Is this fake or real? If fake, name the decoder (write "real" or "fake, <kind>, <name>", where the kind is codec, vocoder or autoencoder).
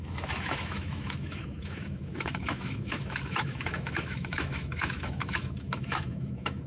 fake, autoencoder, DAC-VAE